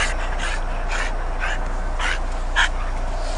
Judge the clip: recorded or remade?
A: recorded